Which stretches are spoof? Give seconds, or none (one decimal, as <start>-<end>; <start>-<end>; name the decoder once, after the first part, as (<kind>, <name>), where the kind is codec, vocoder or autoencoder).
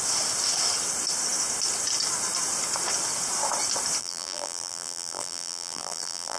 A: 4.0-6.4 (vocoder, BigVGAN v2)